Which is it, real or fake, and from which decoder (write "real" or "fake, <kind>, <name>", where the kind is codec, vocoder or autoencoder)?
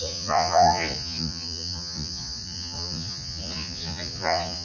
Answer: fake, vocoder, Vocos